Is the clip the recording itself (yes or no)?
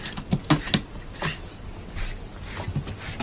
yes